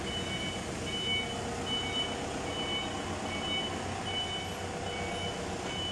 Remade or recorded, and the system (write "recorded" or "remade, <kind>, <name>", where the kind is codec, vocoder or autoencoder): recorded